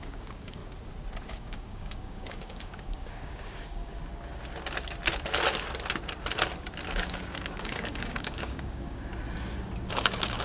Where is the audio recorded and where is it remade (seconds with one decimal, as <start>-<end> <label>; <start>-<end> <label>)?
0.0-0.6 remade; 0.6-1.3 recorded; 1.3-4.0 remade; 4.0-6.9 recorded; 6.9-9.1 remade; 9.1-9.9 recorded; 9.9-10.4 remade